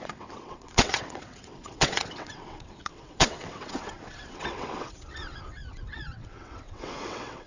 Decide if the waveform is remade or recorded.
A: remade